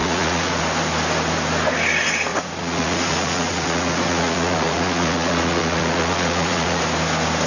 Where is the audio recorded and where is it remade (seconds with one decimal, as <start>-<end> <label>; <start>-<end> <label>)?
0.0-0.6 remade; 0.6-2.3 recorded; 2.3-6.8 remade; 6.8-7.5 recorded